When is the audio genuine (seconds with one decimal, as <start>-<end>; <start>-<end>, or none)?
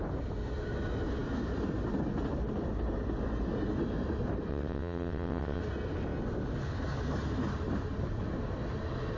0.0-4.5; 5.6-9.2